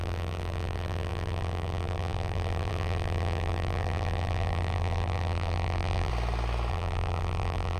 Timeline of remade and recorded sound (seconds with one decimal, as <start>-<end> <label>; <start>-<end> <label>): 0.0-6.1 remade; 6.1-6.7 recorded; 6.7-7.8 remade